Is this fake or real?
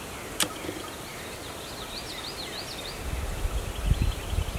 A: real